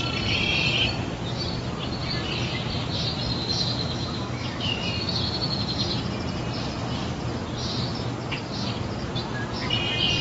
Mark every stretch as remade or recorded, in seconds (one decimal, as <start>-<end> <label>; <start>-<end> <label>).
0.0-3.5 recorded; 3.5-5.1 remade; 5.1-10.2 recorded